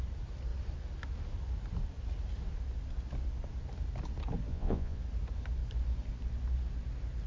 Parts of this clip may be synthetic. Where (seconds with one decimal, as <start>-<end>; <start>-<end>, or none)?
4.5-5.0